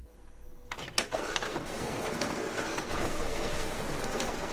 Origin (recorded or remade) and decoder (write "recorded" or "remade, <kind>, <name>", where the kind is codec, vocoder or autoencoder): remade, codec, SNAC